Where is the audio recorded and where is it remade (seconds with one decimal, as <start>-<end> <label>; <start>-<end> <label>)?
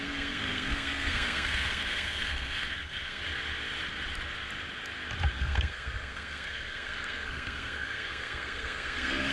0.0-3.2 remade; 3.2-5.3 recorded; 5.3-9.3 remade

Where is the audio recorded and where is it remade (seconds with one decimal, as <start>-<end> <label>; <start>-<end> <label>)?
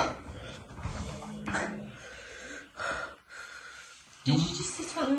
0.0-0.9 recorded; 0.9-1.6 remade; 1.6-5.2 recorded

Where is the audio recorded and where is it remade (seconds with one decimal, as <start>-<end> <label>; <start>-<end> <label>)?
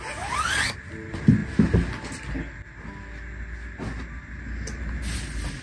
0.0-5.6 recorded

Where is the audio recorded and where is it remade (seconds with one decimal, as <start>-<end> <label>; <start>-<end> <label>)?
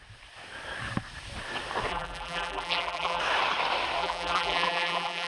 0.0-1.9 recorded; 1.9-3.2 remade; 3.2-4.0 recorded; 4.0-5.3 remade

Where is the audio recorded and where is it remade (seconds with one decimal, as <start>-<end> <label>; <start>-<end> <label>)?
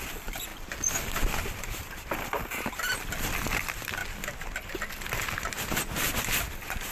0.0-4.0 remade; 4.0-6.0 recorded; 6.0-6.9 remade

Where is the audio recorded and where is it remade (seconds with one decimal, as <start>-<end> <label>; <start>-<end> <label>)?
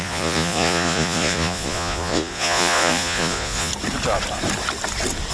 0.0-3.7 remade; 3.7-5.3 recorded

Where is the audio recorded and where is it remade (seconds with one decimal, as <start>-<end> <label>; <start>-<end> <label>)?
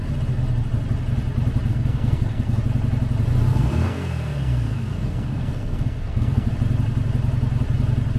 0.0-1.7 recorded; 1.7-2.6 remade; 2.6-3.5 recorded; 3.5-6.5 remade; 6.5-8.2 recorded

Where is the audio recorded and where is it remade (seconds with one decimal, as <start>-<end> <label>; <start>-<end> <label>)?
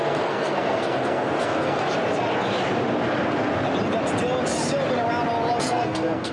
0.0-1.8 remade; 1.8-5.6 recorded; 5.6-6.3 remade